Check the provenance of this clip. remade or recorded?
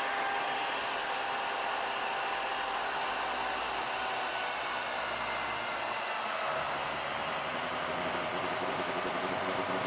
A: recorded